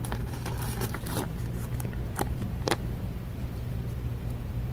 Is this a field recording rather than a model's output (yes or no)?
no